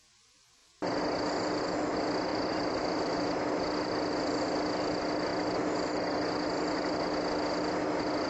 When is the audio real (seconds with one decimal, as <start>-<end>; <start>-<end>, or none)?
0.0-2.3; 3.4-8.3